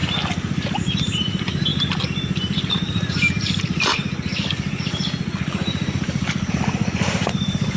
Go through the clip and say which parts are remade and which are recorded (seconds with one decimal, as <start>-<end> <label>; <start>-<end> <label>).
0.0-0.8 recorded; 0.8-1.7 remade; 1.7-2.7 recorded; 2.7-3.9 remade; 3.9-6.5 recorded; 6.5-7.8 remade